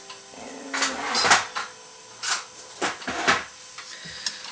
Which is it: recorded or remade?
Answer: recorded